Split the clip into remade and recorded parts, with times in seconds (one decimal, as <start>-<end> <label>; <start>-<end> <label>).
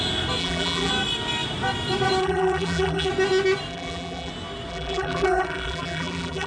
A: 0.0-0.4 recorded; 0.4-0.9 remade; 0.9-2.2 recorded; 2.2-3.1 remade; 3.1-3.7 recorded; 3.7-4.3 remade; 4.3-4.7 recorded; 4.7-6.5 remade